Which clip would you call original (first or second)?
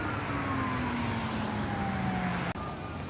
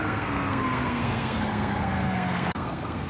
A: first